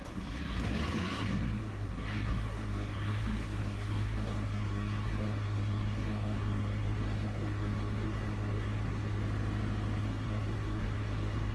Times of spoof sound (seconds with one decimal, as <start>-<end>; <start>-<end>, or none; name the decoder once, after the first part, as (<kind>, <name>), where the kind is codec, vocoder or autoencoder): 0.0-9.2 (codec, SNAC); 10.0-11.5